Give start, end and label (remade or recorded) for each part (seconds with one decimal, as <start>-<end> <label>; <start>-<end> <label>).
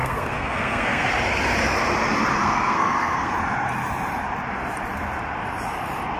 0.0-1.1 remade; 1.1-2.4 recorded; 2.4-3.3 remade; 3.3-6.2 recorded